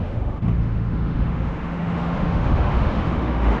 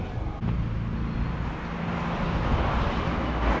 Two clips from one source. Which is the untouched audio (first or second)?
second